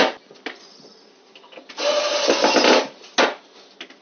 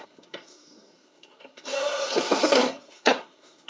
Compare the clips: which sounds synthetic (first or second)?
second